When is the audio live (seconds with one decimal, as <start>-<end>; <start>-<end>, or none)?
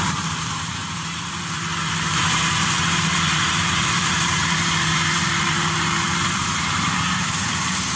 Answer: none